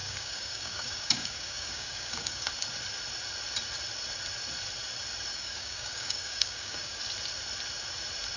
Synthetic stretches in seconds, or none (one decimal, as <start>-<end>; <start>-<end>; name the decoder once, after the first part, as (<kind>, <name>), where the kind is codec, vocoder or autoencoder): 0.0-2.5 (codec, DAC); 5.3-7.0